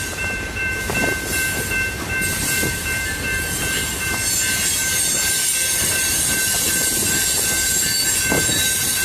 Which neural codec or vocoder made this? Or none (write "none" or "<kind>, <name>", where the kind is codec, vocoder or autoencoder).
vocoder, BigVGAN v2